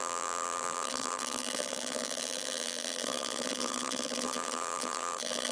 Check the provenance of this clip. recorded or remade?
remade